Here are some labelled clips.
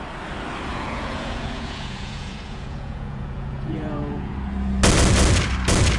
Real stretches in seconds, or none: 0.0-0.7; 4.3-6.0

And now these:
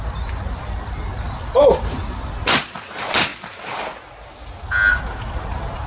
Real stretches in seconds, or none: 0.0-5.9

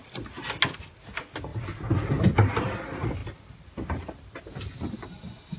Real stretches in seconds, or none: 0.0-5.6

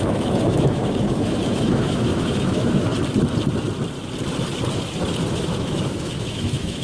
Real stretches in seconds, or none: 2.9-5.3

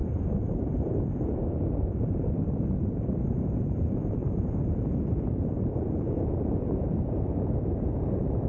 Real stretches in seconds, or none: none